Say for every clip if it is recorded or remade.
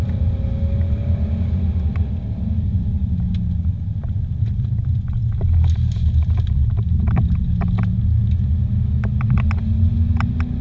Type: recorded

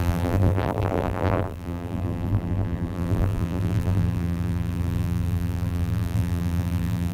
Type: remade